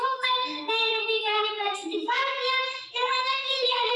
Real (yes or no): no